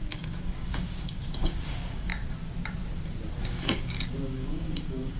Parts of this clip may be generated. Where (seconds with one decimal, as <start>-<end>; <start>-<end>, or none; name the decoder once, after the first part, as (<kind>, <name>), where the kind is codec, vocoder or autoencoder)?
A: 0.0-2.1 (codec, DAC); 3.4-5.2